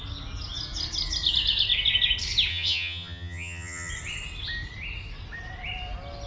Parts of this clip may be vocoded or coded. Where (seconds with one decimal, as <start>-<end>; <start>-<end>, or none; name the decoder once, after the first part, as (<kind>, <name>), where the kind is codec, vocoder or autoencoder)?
2.5-3.9 (vocoder, HiFi-GAN)